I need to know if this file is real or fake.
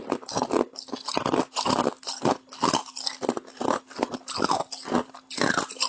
real